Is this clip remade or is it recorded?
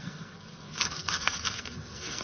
remade